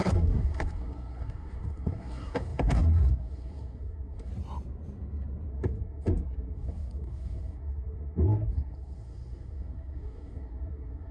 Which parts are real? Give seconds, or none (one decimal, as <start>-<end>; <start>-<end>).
4.3-5.5